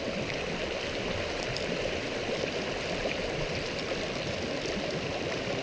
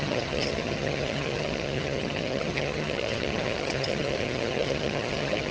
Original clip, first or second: first